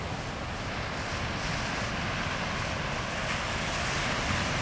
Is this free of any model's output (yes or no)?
yes